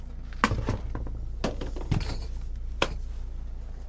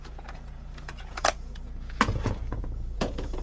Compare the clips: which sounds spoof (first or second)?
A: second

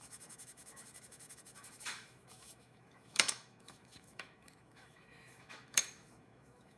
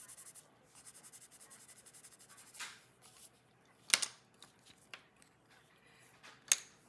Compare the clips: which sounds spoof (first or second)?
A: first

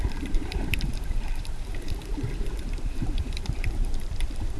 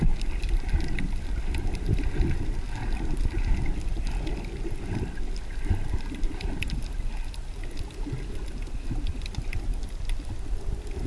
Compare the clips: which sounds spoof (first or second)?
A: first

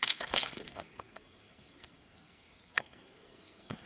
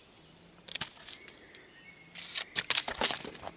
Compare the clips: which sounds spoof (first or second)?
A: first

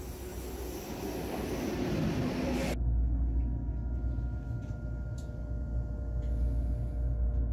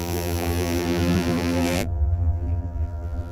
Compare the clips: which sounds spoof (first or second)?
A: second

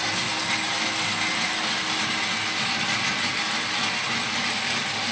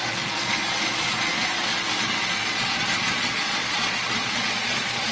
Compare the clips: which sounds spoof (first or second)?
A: second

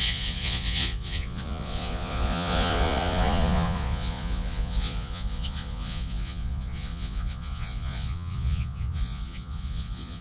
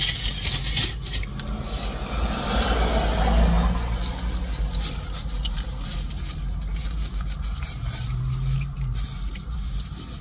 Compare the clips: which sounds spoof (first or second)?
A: first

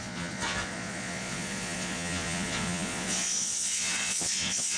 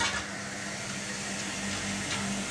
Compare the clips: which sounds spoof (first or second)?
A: first